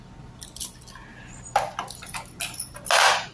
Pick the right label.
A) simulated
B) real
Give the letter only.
B